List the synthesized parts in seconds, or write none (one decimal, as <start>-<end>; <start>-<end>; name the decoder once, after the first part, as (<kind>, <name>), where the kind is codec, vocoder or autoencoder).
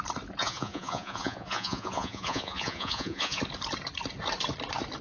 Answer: 0.4-3.4 (vocoder, Vocos)